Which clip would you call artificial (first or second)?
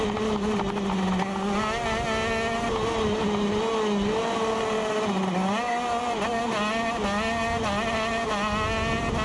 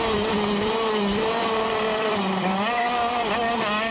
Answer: second